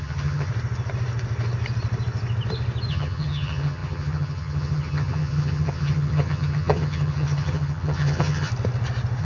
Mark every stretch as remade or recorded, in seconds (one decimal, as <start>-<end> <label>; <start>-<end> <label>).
0.0-0.5 remade; 0.5-2.9 recorded; 2.9-8.5 remade; 8.5-9.2 recorded